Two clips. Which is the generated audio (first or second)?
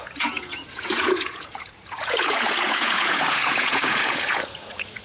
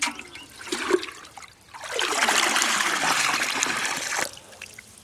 first